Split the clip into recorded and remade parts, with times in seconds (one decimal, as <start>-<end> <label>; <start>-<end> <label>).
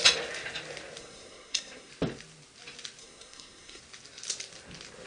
0.0-1.0 recorded; 1.0-1.9 remade; 1.9-3.0 recorded; 3.0-3.8 remade; 3.8-5.1 recorded